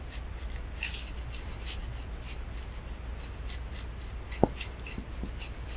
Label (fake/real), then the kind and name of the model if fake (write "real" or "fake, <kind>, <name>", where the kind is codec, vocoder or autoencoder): real